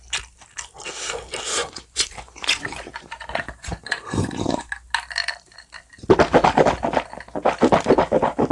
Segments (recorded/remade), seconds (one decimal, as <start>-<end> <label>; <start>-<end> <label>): 0.0-1.6 recorded; 1.6-4.7 remade; 4.7-8.5 recorded